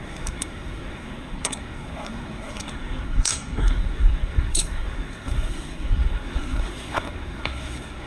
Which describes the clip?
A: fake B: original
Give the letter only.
A